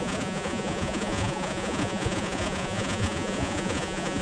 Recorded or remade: remade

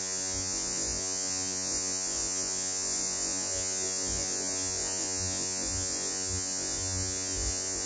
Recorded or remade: remade